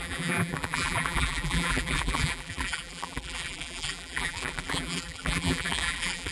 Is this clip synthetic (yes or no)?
yes